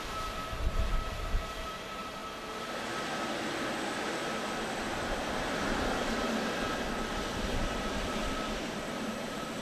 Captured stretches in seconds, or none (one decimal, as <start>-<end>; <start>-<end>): 2.2-6.8